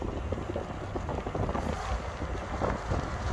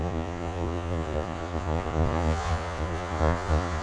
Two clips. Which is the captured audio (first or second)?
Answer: first